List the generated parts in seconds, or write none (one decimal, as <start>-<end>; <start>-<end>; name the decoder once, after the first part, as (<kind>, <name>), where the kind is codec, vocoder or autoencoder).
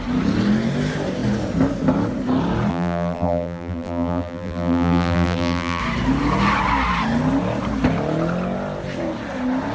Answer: 2.7-5.8 (vocoder, BigVGAN v2)